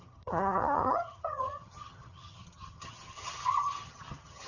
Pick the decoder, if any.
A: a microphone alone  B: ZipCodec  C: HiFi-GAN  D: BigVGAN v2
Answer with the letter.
C